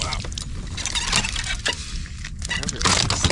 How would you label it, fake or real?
real